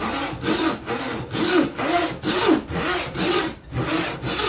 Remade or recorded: recorded